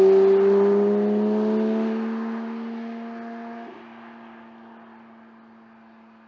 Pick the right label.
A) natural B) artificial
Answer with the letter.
A